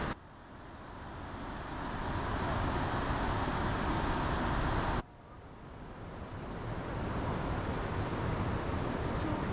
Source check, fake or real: real